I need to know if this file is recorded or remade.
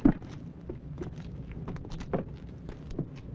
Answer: recorded